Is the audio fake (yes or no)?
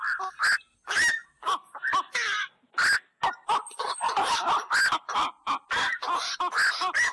no